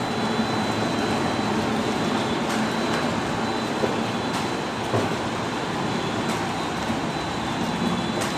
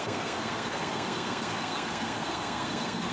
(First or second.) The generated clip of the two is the second